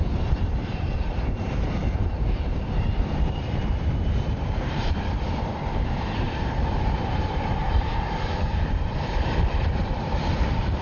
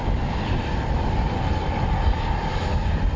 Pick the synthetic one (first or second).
first